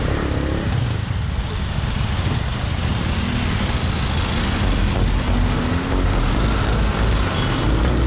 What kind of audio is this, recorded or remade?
recorded